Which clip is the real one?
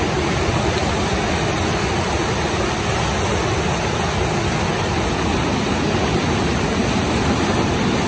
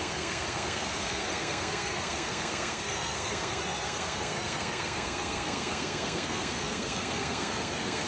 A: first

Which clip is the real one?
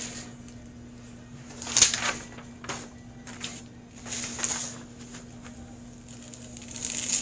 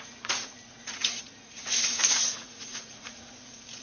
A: first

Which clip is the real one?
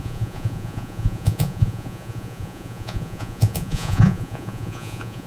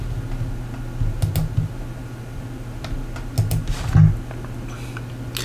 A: second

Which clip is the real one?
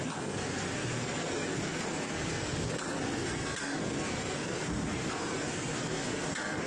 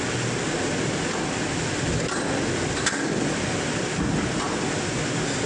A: second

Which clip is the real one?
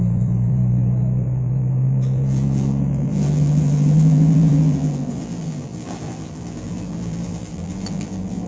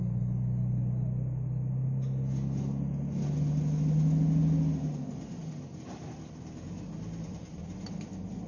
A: second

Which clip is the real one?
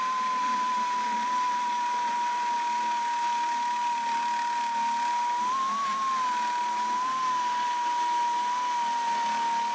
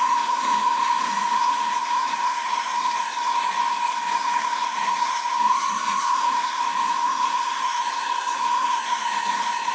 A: first